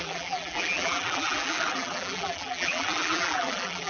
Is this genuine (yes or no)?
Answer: no